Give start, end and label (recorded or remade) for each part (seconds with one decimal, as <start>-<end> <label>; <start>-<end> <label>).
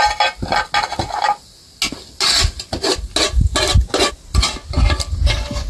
0.0-5.7 recorded